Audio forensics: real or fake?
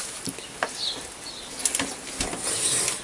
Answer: real